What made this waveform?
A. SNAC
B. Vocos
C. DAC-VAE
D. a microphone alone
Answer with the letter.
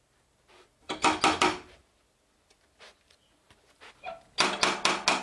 D